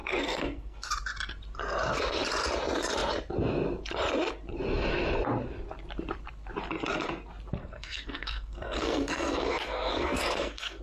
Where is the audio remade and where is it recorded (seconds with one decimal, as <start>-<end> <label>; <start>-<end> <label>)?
0.0-0.9 remade; 0.9-7.6 recorded; 7.6-10.8 remade